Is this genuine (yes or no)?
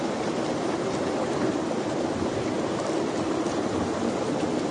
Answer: yes